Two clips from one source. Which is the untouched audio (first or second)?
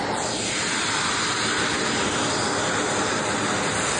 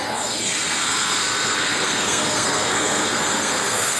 first